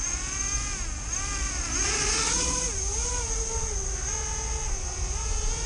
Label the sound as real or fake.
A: real